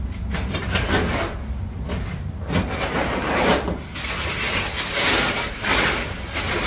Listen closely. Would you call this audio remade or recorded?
remade